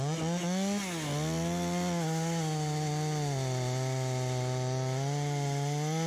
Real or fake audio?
real